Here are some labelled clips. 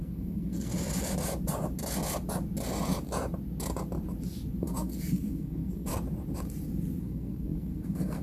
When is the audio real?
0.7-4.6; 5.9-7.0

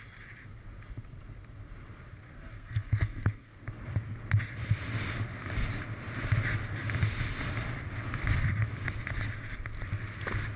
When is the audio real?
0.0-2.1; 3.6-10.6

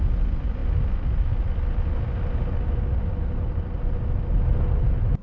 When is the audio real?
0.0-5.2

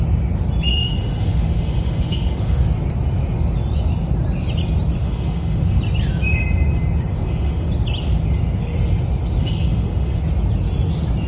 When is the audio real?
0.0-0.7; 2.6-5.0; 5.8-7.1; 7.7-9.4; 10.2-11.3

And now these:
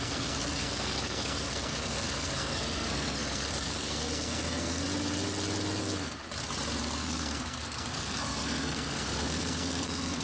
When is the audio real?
4.8-5.8; 6.2-6.8

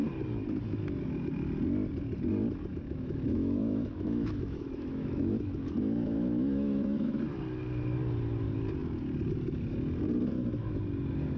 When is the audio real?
0.0-2.7; 7.2-11.4

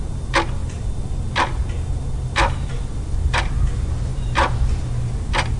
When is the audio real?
0.0-5.6